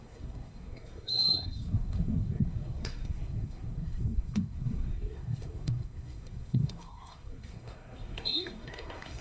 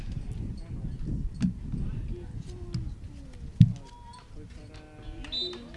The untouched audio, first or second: second